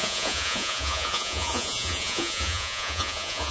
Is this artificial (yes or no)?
yes